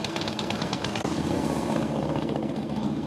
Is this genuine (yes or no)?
no